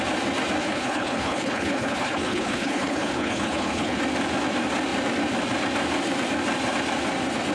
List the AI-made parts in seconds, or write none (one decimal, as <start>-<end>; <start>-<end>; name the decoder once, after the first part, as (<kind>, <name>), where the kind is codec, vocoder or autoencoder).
0.6-4.0 (codec, HILCodec)